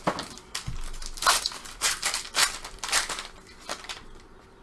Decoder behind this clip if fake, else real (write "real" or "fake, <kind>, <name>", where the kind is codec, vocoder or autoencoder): real